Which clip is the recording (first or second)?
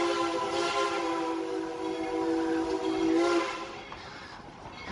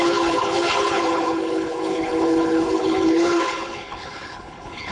first